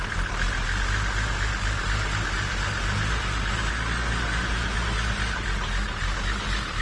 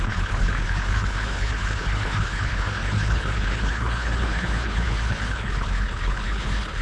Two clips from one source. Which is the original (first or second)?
first